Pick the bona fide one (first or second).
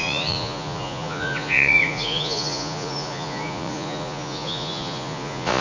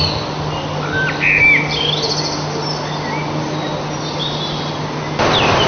second